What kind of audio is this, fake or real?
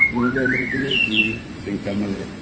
fake